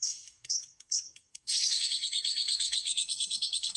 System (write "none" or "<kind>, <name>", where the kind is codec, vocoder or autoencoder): codec, SNAC